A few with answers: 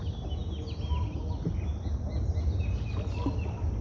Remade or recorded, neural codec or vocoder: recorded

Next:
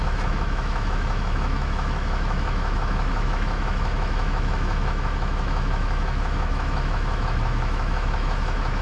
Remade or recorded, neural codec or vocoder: remade, autoencoder, DAC-VAE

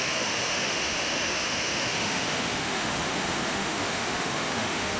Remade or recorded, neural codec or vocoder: remade, autoencoder, DAC-VAE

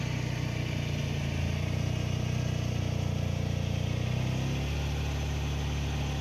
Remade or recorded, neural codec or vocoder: recorded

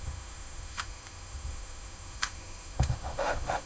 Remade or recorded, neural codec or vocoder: remade, autoencoder, DAC-VAE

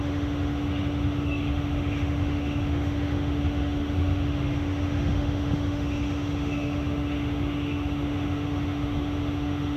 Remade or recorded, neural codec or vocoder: remade, autoencoder, DAC-VAE